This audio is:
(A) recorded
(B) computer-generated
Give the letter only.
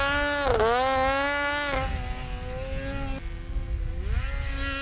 A